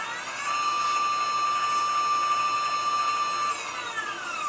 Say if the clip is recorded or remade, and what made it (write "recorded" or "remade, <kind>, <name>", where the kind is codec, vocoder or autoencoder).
recorded